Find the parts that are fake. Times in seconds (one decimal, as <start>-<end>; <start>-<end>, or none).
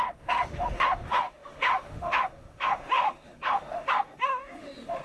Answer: 0.0-5.0